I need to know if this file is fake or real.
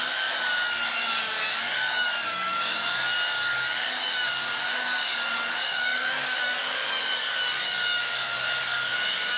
fake